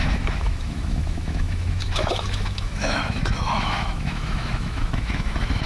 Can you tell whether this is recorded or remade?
remade